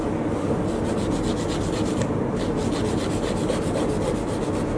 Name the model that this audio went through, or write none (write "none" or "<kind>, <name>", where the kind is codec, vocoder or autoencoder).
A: none